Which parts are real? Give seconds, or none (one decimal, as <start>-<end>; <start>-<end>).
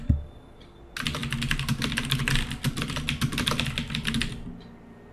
0.0-5.1